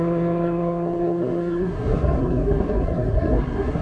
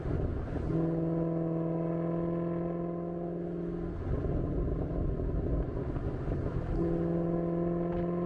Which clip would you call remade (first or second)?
first